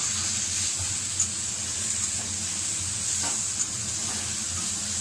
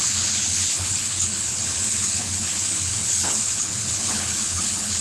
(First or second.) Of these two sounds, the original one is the first